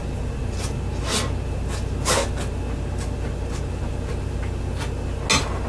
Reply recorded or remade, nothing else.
recorded